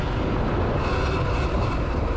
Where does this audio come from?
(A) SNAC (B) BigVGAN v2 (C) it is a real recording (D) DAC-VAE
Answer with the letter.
C